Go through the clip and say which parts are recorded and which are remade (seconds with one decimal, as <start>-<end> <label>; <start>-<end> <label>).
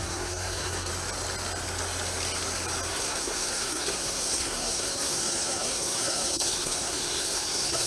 0.0-0.9 remade; 0.9-2.9 recorded; 2.9-7.9 remade